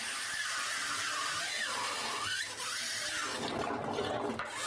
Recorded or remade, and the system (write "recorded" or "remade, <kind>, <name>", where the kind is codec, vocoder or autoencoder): recorded